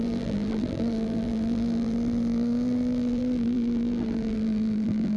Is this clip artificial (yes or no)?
yes